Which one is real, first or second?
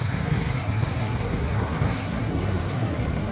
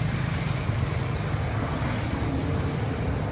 second